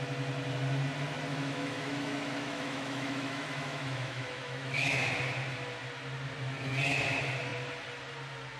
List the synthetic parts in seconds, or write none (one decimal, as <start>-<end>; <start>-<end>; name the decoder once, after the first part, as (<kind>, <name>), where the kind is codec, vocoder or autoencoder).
1.3-5.0 (autoencoder, DAC-VAE)